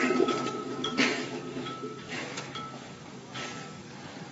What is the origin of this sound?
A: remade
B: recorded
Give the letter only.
A